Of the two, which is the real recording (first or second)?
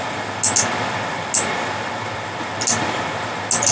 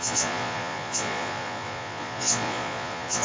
first